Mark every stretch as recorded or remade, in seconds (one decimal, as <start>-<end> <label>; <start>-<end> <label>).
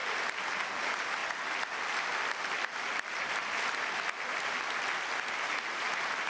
0.0-6.3 recorded